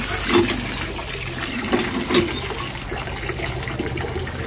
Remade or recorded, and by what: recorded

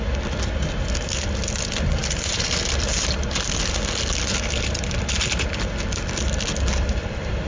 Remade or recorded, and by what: recorded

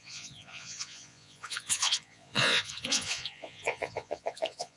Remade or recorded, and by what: remade, vocoder, Vocos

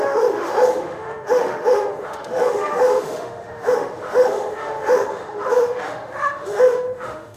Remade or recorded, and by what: remade, autoencoder, DAC-VAE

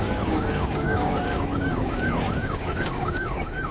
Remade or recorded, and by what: remade, codec, DAC